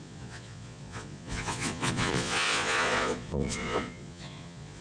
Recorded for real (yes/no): no